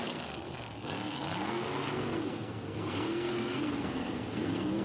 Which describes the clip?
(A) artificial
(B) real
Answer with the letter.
A